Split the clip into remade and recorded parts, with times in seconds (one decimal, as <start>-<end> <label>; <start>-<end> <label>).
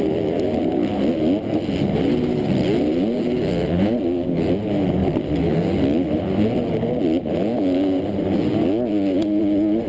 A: 0.0-9.9 recorded